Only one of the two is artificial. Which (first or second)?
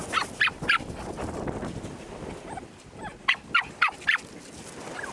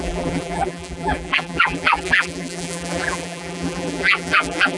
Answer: second